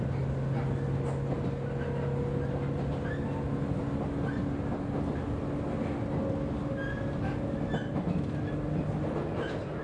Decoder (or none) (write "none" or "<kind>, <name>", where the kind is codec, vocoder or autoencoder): none